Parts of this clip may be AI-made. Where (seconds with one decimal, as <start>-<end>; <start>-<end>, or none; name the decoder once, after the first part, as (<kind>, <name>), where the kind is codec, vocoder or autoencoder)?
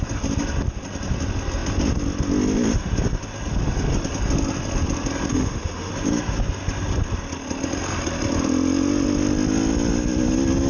5.3-5.9 (autoencoder, DAC-VAE)